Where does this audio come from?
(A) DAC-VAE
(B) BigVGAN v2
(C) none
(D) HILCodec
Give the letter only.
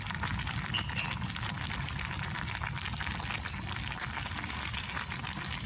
C